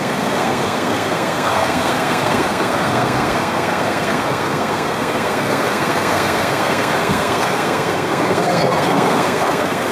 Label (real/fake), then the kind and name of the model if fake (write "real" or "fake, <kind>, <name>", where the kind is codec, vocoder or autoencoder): fake, codec, SNAC